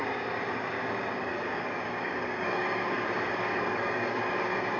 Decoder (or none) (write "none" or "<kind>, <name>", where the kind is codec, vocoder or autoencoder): codec, DAC